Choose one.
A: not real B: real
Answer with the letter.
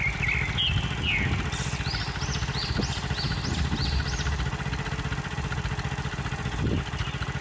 B